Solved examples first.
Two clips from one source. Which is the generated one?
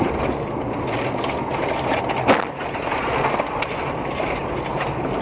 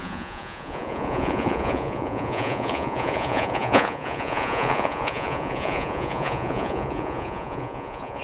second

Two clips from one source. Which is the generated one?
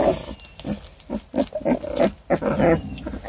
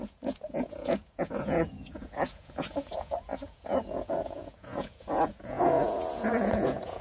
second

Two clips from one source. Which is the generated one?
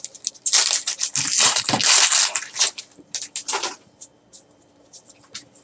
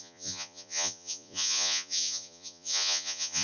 second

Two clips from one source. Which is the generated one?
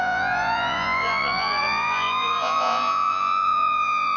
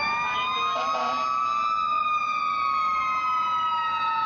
first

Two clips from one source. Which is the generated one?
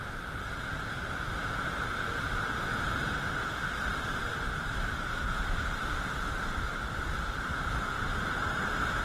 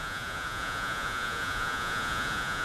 second